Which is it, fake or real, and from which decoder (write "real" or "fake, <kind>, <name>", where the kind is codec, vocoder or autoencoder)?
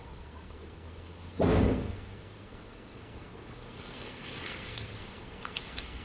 fake, codec, SNAC